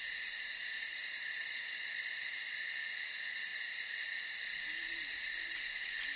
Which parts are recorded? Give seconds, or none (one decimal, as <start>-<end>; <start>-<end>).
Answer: 0.0-0.9; 2.0-6.2

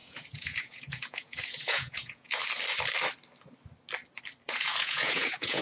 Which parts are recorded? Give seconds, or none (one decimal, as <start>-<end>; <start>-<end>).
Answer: 2.4-4.5

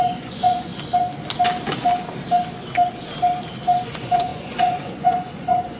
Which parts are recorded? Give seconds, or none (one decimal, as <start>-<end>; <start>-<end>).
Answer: 0.7-3.8